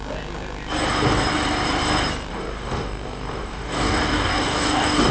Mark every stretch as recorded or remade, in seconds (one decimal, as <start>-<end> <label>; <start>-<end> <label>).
0.0-2.3 recorded; 2.3-5.1 remade